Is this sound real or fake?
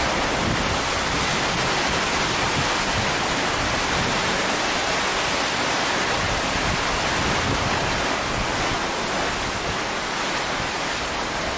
real